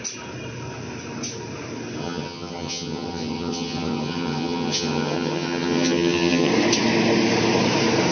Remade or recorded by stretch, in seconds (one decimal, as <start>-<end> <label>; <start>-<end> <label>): 0.0-2.0 recorded; 2.0-6.5 remade; 6.5-8.1 recorded